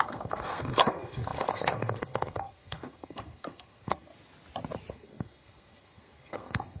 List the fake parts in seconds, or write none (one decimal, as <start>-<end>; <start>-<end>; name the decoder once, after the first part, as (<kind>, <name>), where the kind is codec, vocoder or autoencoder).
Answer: 0.0-4.1 (codec, SNAC); 4.9-6.8